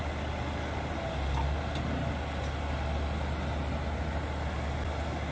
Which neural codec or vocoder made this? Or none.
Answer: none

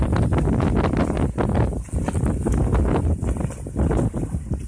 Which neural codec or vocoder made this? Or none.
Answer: none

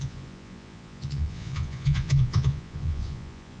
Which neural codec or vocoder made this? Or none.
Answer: vocoder, Vocos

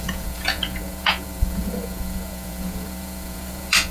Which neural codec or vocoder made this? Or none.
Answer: vocoder, Vocos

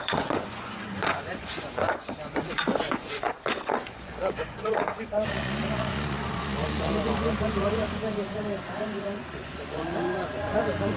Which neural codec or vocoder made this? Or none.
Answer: vocoder, Vocos